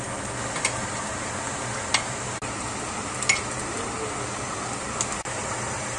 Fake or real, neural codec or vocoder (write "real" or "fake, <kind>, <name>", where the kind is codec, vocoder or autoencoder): real